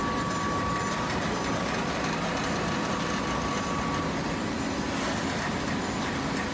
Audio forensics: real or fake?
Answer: real